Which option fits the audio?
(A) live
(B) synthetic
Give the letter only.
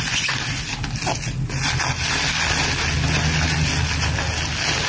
A